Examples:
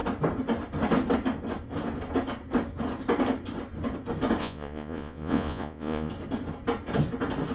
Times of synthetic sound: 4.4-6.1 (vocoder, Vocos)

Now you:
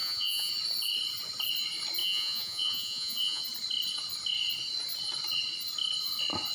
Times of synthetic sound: 0.0-0.5 (vocoder, Vocos); 2.0-3.4

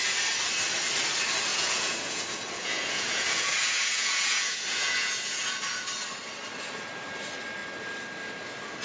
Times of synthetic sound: 1.5-5.9 (vocoder, Vocos)

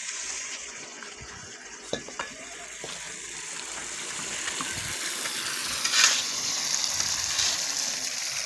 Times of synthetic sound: 0.0-2.6 (vocoder, Vocos); 5.6-6.6

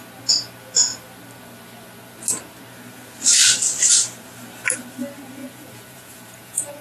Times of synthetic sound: 5.4-6.8 (vocoder, Vocos)

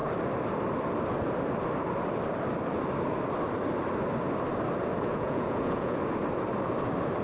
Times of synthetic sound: 5.1-6.0 (vocoder, Vocos)

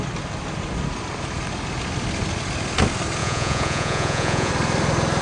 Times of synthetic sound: 3.2-4.5 (vocoder, Vocos)